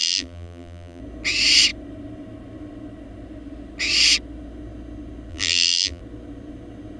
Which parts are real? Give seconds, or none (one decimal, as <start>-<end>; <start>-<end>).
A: 1.0-5.3; 6.0-7.0